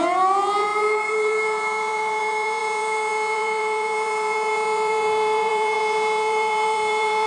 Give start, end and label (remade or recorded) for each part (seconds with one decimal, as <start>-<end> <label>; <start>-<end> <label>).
0.0-7.3 remade